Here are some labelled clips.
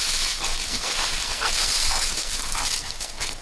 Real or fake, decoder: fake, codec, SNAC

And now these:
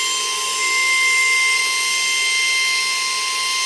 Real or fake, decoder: real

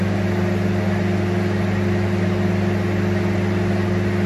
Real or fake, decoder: real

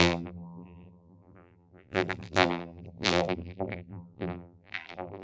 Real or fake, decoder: fake, vocoder, BigVGAN v2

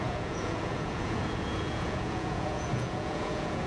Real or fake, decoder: fake, vocoder, Vocos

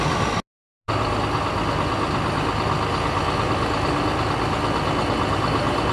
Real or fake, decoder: real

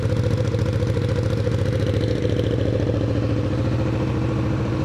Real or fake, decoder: fake, vocoder, BigVGAN v2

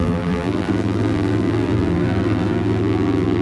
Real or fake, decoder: fake, vocoder, BigVGAN v2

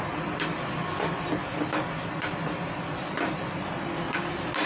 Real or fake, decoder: real